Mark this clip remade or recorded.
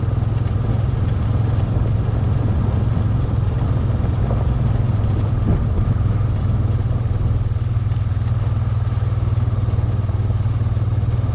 recorded